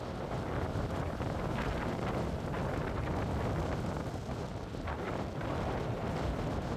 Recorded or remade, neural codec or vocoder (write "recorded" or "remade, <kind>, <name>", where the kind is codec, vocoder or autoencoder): recorded